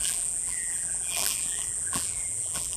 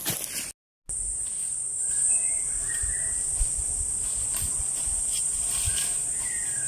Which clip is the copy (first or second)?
first